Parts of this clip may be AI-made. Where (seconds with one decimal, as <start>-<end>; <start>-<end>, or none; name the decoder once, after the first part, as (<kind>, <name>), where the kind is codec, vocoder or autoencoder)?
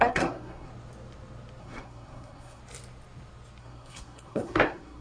0.0-0.7 (codec, SNAC); 1.6-2.6; 3.6-5.0